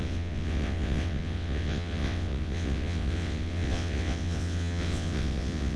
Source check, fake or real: fake